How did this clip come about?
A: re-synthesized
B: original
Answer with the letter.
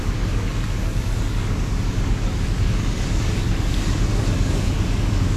A